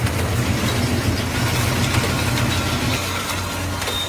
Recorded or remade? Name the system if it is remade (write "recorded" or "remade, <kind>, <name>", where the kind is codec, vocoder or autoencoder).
recorded